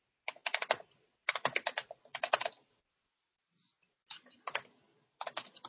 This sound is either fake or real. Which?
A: real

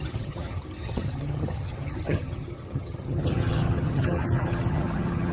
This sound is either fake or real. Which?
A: fake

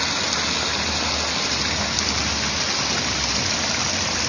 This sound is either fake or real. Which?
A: real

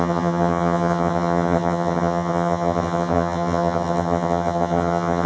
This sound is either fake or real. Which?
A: fake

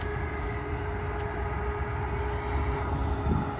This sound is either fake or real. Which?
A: real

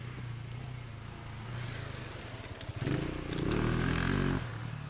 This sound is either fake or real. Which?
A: real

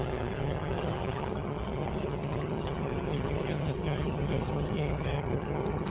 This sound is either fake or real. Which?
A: fake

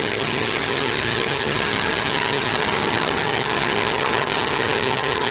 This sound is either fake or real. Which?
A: fake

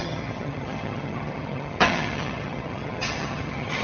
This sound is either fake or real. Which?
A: fake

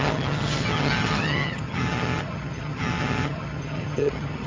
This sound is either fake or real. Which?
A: fake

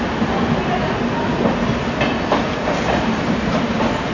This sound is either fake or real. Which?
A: real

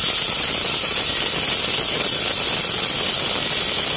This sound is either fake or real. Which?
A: real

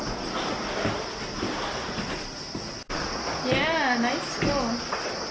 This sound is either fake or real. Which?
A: real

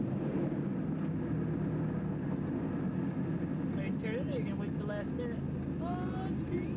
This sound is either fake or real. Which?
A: real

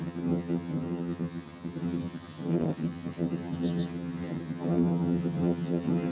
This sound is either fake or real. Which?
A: fake